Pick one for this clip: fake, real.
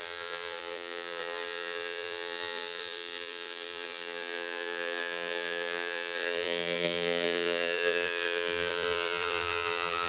fake